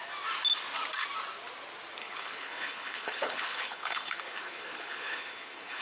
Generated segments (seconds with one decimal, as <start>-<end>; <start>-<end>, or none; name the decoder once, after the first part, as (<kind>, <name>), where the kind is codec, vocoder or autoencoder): 2.0-5.8 (codec, HILCodec)